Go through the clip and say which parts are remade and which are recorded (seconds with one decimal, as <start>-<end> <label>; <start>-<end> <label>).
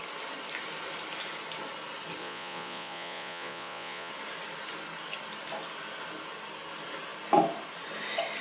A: 0.0-2.2 recorded; 2.2-4.1 remade; 4.1-8.4 recorded